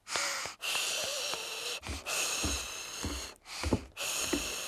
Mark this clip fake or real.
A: real